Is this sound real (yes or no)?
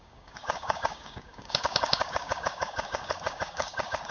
no